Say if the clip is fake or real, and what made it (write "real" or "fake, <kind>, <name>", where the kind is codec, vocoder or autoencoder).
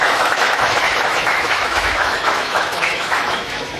fake, autoencoder, DAC-VAE